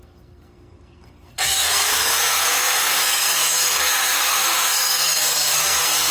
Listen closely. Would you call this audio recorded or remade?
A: remade